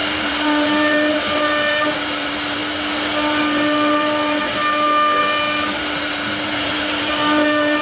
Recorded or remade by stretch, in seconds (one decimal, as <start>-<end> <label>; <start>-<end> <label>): 0.0-2.6 remade; 2.6-3.4 recorded; 3.4-4.6 remade; 4.6-5.2 recorded; 5.2-7.8 remade